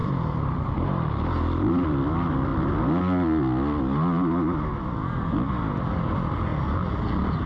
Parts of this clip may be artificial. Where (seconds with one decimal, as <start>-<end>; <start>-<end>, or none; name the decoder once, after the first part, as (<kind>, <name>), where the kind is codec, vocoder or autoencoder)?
0.0-2.5 (vocoder, BigVGAN v2); 5.5-6.5